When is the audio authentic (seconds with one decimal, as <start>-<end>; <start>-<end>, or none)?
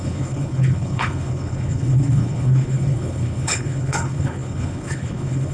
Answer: none